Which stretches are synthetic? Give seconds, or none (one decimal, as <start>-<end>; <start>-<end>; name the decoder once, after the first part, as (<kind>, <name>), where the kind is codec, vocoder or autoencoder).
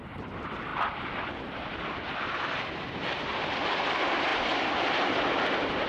none